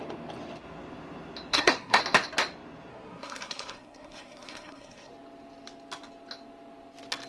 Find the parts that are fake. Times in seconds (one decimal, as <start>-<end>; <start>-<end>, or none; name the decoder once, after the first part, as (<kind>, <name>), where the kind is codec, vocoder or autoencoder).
1.5-2.0 (codec, SNAC); 2.9-5.1